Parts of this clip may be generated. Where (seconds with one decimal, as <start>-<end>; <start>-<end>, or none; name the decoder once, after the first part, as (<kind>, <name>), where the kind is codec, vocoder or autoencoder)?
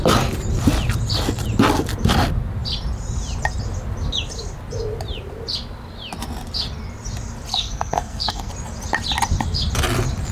7.5-8.5 (codec, SNAC)